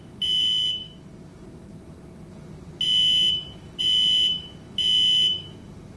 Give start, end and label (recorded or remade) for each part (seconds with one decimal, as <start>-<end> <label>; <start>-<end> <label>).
0.0-6.0 recorded